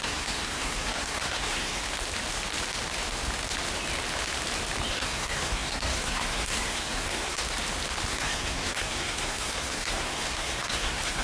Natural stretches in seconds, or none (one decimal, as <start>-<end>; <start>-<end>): 1.8-4.9; 7.4-8.1